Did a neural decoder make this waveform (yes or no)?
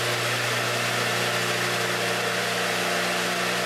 no